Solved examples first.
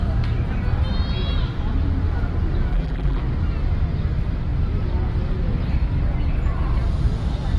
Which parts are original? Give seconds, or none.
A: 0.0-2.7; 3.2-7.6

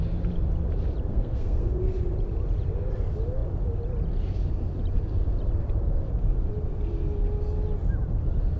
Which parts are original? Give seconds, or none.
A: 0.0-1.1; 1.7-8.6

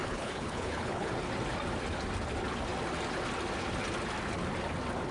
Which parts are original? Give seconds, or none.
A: 1.1-5.1

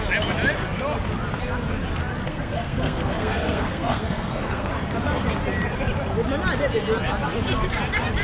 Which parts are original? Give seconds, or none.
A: 0.0-2.3; 4.7-8.2

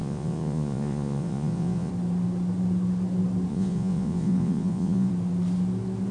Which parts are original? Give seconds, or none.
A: 1.9-3.5; 5.1-6.1

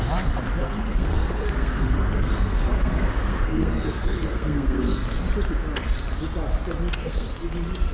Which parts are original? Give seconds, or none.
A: 0.0-0.6; 5.3-7.0; 7.5-7.9

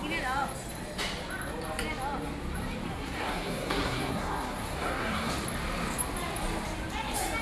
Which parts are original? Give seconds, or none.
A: 0.0-2.9; 5.3-7.4

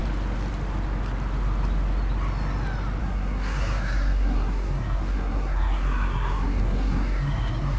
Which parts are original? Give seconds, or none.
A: 0.0-3.0